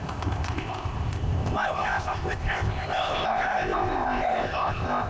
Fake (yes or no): yes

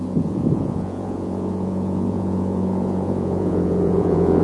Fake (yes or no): yes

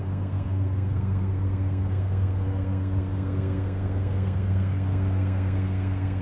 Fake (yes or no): yes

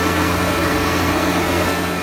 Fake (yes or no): yes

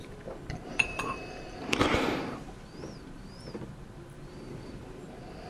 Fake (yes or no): yes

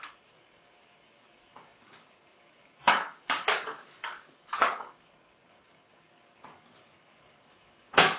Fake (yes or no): yes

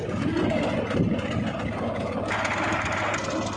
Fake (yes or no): no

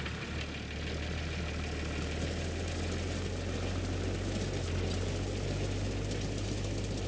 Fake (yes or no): no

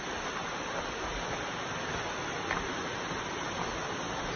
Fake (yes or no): no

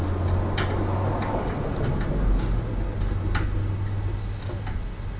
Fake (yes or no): no